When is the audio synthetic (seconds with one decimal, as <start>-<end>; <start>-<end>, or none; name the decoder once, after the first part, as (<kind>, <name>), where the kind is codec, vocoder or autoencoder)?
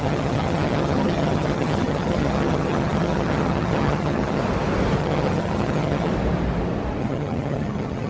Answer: 0.0-4.4 (vocoder, HiFi-GAN); 5.0-6.1; 7.0-8.1